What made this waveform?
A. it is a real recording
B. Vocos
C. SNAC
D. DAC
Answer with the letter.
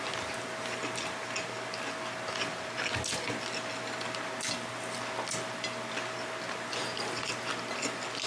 A